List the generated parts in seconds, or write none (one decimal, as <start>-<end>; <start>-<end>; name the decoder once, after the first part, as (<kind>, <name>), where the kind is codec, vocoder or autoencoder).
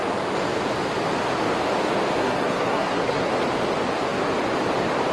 2.2-3.3 (codec, SNAC)